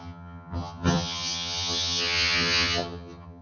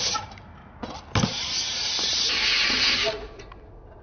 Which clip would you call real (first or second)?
second